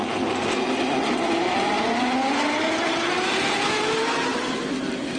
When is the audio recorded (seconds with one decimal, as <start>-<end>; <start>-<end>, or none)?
0.0-5.2